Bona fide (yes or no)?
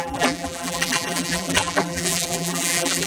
no